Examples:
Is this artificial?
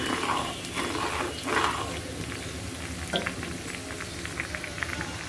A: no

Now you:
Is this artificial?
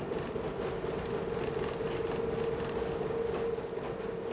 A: no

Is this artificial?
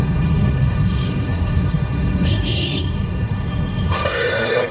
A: yes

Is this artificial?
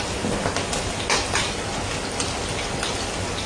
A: no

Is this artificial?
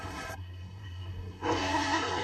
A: yes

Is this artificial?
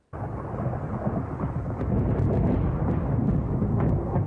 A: no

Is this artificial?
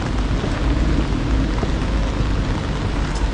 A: no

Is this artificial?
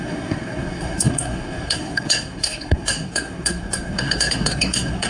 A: yes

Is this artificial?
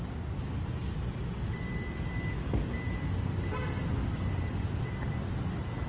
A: no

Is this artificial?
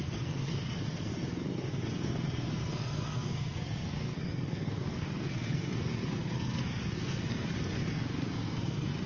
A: yes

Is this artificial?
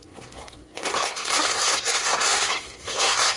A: yes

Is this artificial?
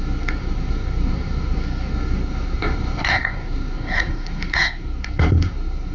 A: yes